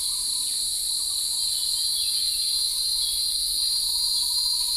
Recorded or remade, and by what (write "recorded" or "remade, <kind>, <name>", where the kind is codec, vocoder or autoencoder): recorded